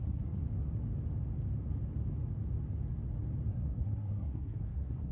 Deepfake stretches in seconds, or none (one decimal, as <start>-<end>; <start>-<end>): 0.0-0.4; 3.5-5.1